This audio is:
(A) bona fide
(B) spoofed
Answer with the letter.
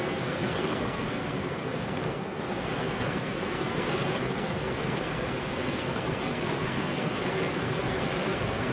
B